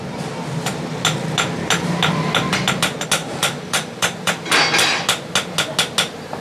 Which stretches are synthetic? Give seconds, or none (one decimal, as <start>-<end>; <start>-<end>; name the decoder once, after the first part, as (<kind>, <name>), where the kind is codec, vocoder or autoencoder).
3.2-4.6 (vocoder, BigVGAN v2)